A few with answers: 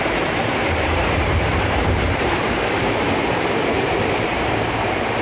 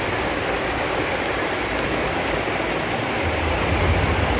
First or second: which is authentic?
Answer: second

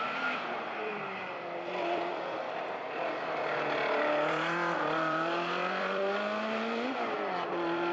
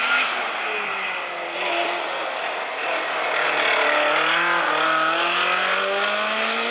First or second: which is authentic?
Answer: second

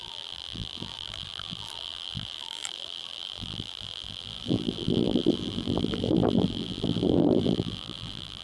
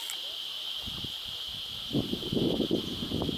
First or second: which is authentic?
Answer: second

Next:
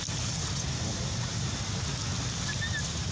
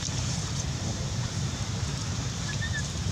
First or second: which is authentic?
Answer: first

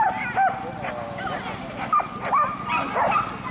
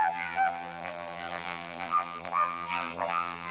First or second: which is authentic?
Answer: first